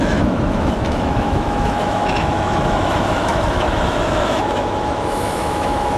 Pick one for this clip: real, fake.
fake